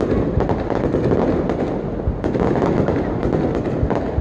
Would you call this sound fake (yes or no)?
no